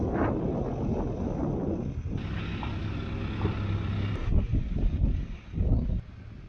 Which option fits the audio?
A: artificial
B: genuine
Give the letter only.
B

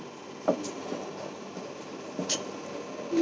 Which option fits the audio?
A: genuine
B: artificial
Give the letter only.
A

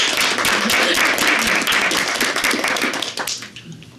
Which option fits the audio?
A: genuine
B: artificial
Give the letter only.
A